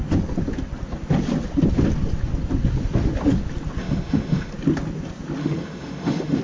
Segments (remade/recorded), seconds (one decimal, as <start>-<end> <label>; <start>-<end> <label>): 0.0-3.8 recorded; 3.8-4.5 remade; 4.5-5.4 recorded; 5.4-6.4 remade